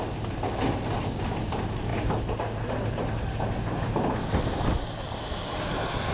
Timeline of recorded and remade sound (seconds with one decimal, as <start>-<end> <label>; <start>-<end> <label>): 0.0-6.1 recorded